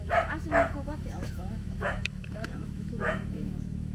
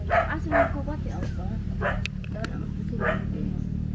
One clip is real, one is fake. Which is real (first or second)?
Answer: second